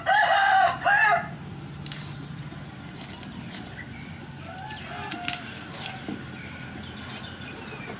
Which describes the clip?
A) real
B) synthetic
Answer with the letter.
A